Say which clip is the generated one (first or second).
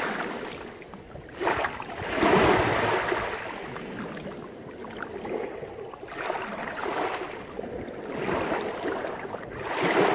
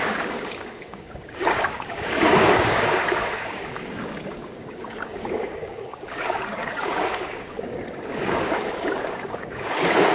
second